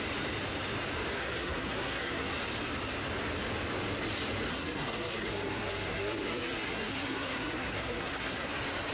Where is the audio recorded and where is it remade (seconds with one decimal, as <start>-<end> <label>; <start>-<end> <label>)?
0.0-1.2 recorded; 1.2-2.3 remade; 2.3-4.5 recorded; 4.5-8.5 remade; 8.5-8.9 recorded

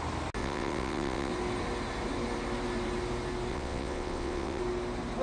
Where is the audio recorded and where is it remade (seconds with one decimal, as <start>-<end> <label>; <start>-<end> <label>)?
0.0-0.4 recorded; 0.4-1.3 remade; 1.3-3.5 recorded; 3.5-4.6 remade; 4.6-5.2 recorded

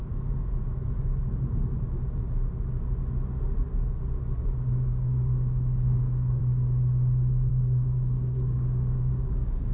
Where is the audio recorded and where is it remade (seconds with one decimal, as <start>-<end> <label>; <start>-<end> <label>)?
0.0-4.9 recorded; 4.9-6.4 remade; 6.4-7.5 recorded; 7.5-9.7 remade

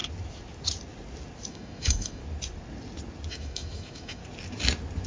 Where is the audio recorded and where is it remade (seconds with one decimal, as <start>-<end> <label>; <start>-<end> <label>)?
0.0-1.5 recorded; 1.5-2.2 remade; 2.2-3.3 recorded; 3.3-4.2 remade; 4.2-5.1 recorded